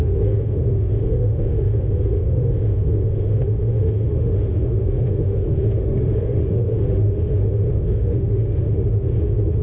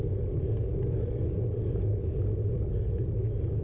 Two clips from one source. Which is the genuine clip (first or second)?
second